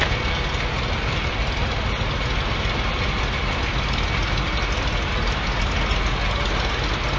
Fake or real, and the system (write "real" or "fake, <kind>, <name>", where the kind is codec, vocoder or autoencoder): real